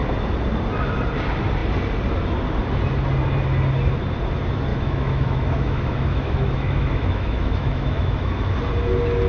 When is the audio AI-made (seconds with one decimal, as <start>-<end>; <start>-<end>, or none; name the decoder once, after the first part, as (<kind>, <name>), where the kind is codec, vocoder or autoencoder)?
4.7-8.5 (autoencoder, DAC-VAE)